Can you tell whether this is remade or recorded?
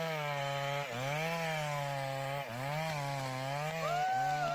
recorded